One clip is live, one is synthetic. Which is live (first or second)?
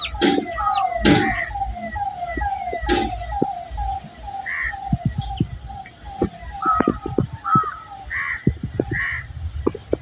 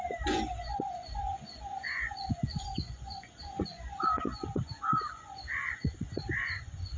first